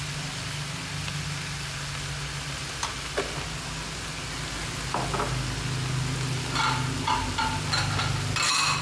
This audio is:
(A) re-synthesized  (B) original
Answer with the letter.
B